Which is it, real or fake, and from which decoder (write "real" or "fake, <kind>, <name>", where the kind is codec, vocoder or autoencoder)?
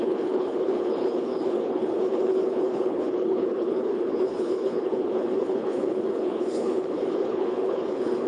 fake, codec, HILCodec